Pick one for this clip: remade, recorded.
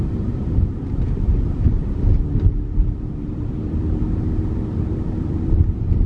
remade